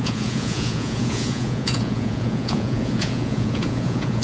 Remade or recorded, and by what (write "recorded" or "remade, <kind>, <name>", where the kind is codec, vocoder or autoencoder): remade, vocoder, Vocos